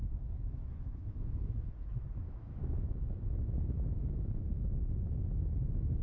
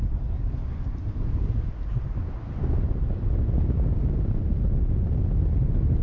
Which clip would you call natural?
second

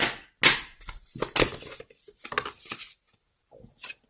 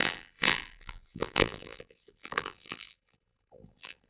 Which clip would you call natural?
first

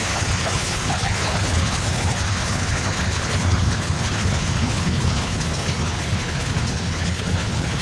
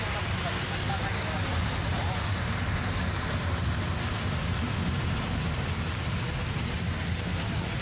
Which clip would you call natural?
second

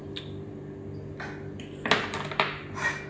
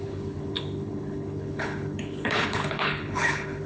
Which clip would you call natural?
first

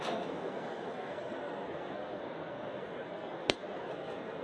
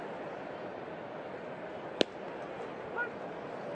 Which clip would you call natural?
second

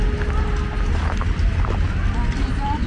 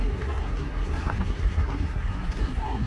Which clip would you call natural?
first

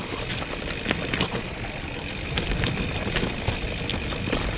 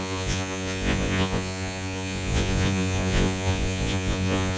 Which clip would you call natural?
first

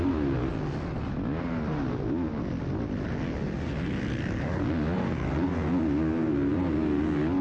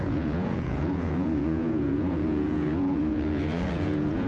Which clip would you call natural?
first